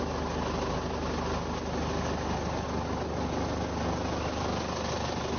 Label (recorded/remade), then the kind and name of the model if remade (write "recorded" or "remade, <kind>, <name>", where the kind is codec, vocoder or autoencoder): recorded